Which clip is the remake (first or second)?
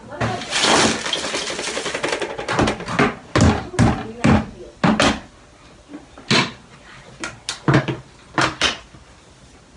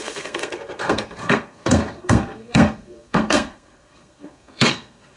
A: second